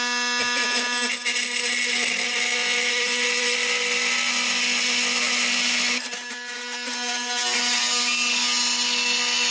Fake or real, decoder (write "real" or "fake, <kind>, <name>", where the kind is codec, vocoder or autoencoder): real